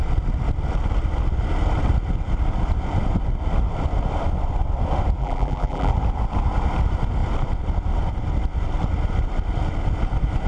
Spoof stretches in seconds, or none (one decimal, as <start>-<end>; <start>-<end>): 5.2-5.9